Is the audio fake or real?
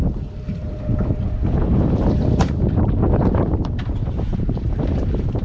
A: fake